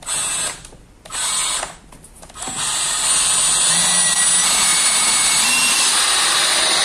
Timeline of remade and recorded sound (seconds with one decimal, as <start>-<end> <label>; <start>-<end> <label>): 0.0-6.8 recorded